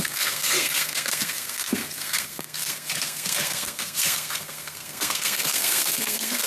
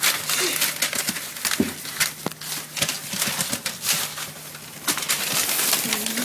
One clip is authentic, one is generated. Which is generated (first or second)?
first